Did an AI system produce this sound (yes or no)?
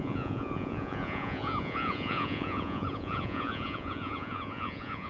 yes